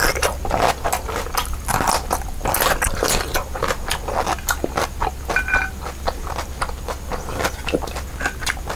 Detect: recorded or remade recorded